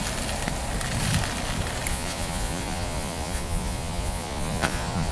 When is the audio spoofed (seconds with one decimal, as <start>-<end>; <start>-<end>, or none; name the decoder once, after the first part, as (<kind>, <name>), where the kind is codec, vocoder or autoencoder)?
1.9-5.1 (vocoder, Vocos)